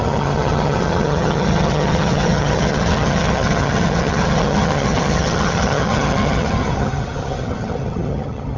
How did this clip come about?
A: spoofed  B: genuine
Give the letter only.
A